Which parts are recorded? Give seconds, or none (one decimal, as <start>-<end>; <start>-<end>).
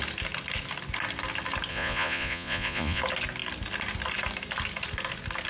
0.0-1.7; 3.0-5.5